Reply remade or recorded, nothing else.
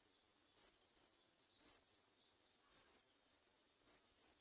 recorded